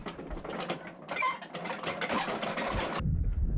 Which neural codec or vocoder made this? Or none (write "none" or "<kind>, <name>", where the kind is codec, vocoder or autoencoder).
none